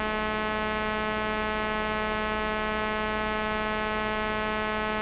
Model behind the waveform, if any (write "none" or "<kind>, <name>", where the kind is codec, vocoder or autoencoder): none